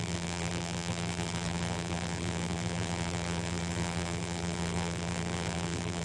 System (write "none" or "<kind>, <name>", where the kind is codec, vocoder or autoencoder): vocoder, BigVGAN v2